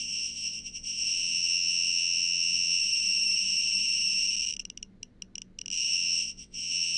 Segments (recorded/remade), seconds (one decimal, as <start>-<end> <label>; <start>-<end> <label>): 0.0-2.8 remade; 2.8-5.9 recorded; 5.9-7.0 remade